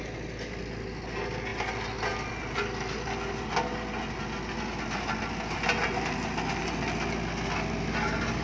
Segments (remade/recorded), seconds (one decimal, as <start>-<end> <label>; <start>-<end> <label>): 0.0-8.4 recorded